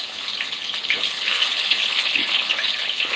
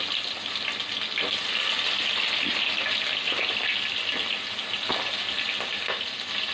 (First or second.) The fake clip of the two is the first